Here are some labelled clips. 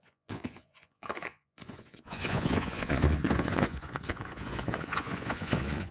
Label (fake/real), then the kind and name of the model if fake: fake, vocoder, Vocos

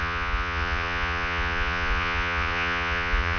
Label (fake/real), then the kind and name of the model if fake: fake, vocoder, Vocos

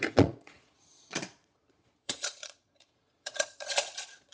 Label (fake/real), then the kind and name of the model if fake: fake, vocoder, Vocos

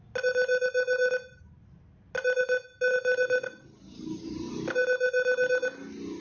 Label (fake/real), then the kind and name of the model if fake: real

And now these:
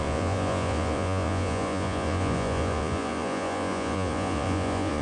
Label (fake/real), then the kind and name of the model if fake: fake, vocoder, Vocos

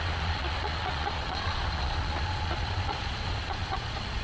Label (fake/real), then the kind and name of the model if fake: fake, vocoder, Vocos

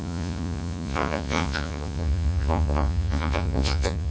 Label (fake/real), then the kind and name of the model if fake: fake, vocoder, Vocos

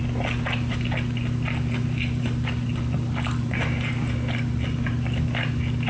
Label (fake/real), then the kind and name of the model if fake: real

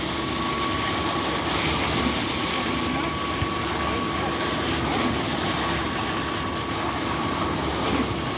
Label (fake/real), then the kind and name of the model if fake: real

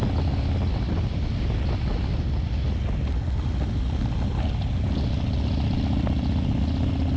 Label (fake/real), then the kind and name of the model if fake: real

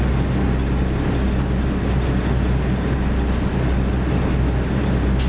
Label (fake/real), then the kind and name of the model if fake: real